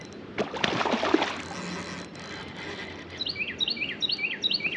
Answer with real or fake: real